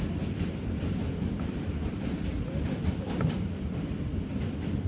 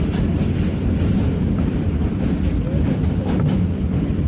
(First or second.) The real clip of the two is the second